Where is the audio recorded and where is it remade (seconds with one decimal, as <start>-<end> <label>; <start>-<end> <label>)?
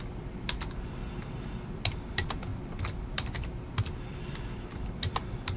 0.0-5.6 recorded